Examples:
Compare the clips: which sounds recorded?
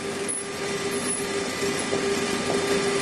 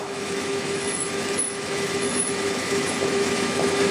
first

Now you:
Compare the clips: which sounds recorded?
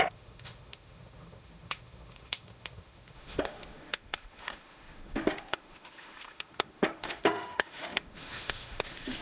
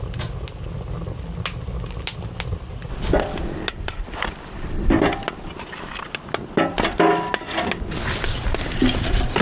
second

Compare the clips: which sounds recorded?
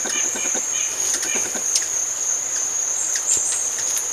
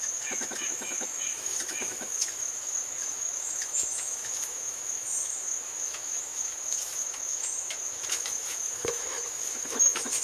first